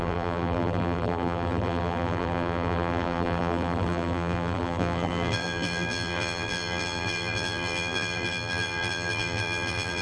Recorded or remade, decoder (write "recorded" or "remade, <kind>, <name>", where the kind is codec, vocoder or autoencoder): remade, vocoder, BigVGAN v2